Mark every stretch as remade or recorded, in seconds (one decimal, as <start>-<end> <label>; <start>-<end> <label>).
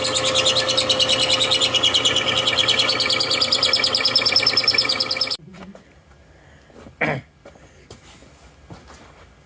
0.0-9.5 recorded